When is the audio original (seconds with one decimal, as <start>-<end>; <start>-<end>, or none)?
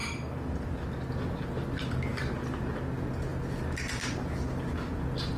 0.0-5.4